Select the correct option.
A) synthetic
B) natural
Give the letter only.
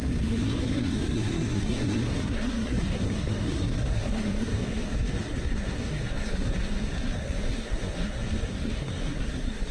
A